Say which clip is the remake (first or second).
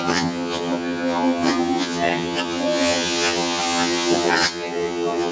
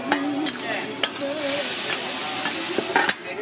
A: first